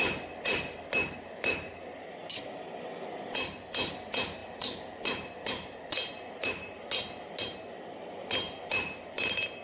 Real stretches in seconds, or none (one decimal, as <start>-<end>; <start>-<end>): 0.0-9.6

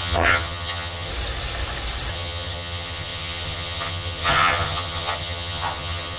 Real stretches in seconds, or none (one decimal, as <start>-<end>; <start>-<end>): 1.1-2.1

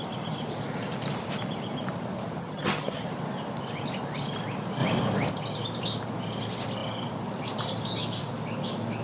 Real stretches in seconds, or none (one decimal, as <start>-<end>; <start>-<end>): 0.0-2.4; 3.1-9.0

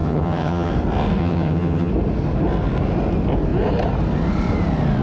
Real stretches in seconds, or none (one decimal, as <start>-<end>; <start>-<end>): 0.7-1.2; 1.9-5.0

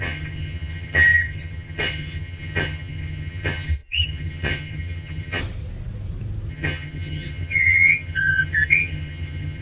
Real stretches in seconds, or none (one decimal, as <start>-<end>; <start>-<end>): 5.4-6.5